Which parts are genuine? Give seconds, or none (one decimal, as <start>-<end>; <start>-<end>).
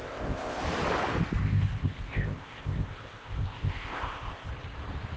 0.6-1.4; 4.5-5.2